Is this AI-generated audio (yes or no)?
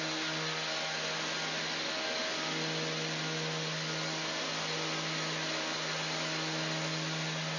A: no